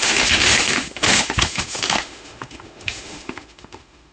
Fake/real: fake